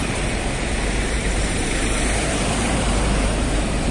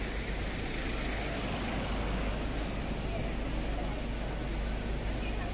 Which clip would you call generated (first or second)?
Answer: first